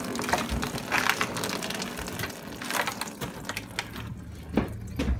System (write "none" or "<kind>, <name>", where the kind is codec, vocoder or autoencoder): none